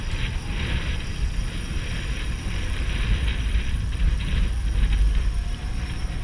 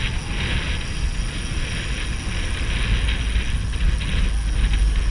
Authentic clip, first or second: second